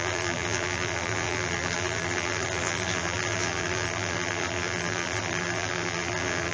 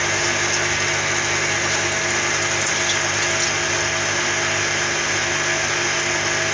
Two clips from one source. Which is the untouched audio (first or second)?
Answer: second